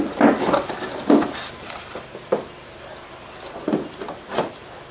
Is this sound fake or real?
real